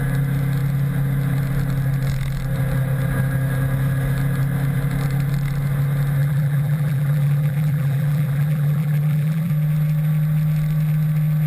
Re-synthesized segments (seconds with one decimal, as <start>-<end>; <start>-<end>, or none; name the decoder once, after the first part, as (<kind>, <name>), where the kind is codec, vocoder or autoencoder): 6.2-9.5 (vocoder, BigVGAN v2)